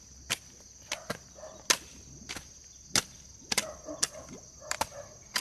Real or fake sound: real